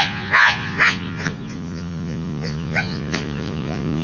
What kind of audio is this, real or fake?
fake